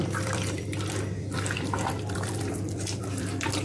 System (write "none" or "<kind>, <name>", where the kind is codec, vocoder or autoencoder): vocoder, BigVGAN v2